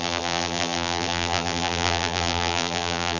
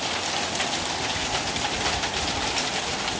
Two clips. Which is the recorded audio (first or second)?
second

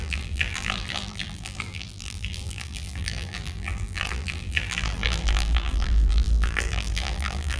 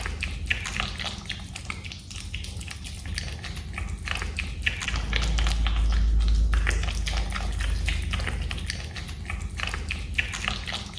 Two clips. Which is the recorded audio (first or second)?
second